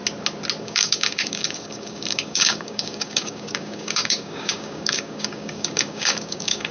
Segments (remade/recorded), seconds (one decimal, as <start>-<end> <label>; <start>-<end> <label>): 0.0-0.6 recorded; 0.6-6.7 remade